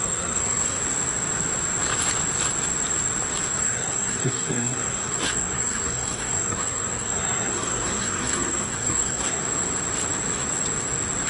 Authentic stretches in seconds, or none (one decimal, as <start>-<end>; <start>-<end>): 0.8-3.6; 9.4-11.3